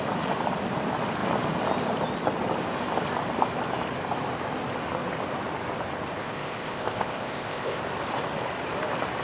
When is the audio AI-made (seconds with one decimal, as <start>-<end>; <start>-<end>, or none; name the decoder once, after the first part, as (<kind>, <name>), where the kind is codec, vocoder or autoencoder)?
6.2-7.8 (codec, ZipCodec)